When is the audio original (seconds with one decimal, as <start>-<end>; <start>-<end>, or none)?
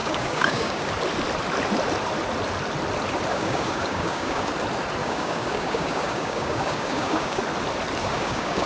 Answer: 0.9-3.3; 4.5-5.0; 7.4-8.0